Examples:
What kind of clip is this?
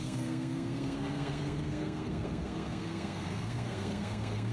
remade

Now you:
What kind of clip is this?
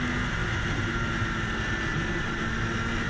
recorded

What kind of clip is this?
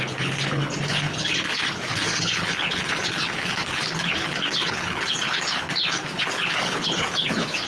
remade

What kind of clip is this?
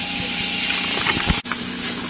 recorded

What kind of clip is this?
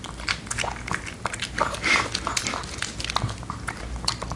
recorded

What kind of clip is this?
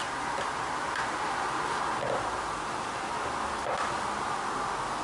recorded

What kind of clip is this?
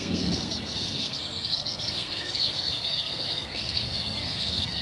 remade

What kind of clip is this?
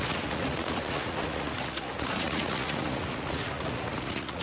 remade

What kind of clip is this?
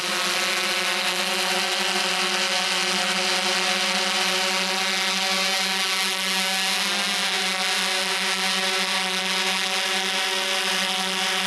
recorded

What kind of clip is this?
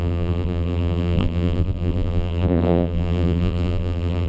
remade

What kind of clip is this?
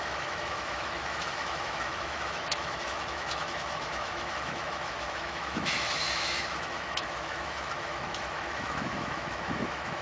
remade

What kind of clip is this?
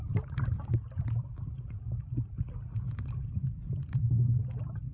recorded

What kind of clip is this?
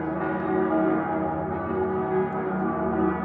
recorded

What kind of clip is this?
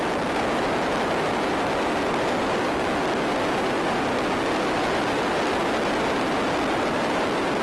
recorded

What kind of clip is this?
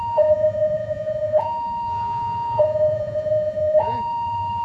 remade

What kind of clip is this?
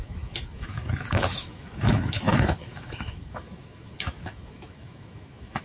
remade